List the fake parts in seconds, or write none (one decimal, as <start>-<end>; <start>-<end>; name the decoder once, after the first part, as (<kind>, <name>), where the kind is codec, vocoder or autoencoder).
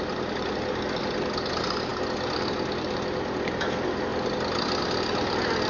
none